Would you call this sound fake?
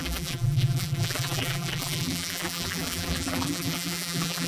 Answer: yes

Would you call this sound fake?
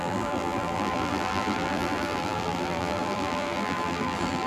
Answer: yes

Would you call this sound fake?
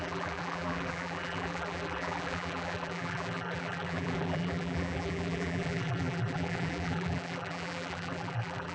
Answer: yes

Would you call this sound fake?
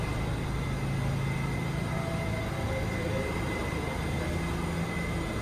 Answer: no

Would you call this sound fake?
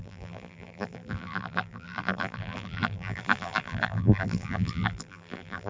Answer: yes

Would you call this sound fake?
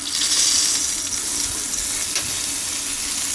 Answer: no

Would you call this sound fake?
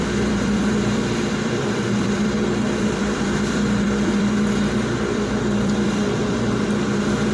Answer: yes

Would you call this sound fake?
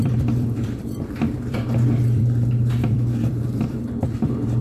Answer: yes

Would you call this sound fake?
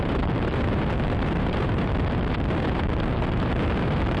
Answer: yes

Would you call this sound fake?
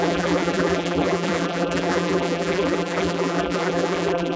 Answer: yes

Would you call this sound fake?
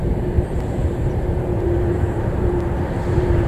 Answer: yes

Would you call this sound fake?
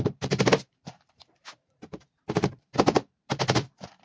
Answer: yes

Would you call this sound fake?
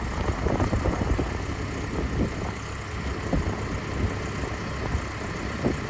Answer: no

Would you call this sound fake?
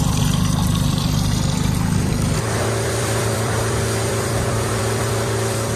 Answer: yes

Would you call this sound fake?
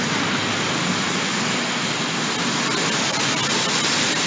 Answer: no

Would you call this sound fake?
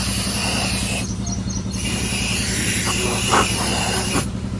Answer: yes